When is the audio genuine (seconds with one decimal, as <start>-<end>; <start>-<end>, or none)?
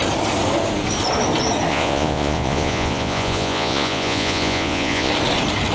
0.0-1.7; 5.1-5.7